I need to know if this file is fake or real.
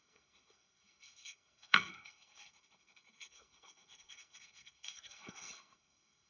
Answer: fake